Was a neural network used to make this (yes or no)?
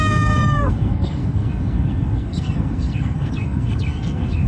yes